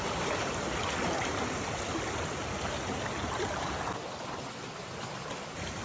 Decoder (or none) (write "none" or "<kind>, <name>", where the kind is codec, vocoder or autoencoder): none